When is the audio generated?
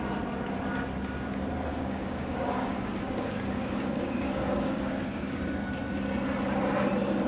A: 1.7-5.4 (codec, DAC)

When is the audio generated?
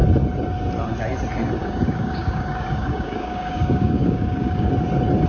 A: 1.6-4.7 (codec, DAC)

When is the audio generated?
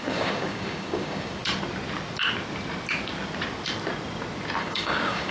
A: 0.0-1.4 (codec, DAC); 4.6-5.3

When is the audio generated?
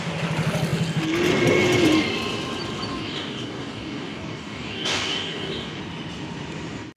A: 2.9-5.8 (codec, DAC)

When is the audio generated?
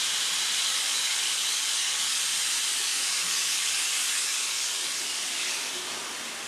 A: 0.6-2.2 (codec, DAC); 2.7-5.7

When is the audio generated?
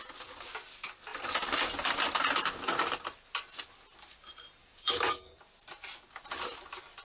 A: 4.6-5.4 (codec, DAC)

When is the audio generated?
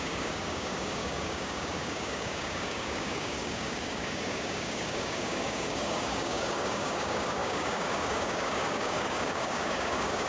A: 0.0-10.3 (codec, DAC)